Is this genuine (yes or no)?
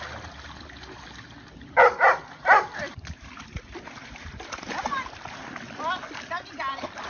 yes